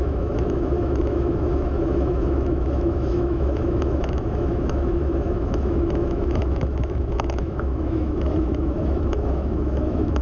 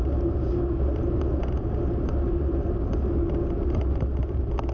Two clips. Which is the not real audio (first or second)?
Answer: first